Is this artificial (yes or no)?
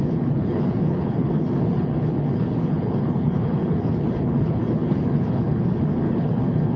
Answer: yes